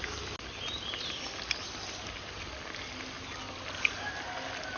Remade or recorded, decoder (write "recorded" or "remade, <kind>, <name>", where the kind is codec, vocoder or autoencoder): recorded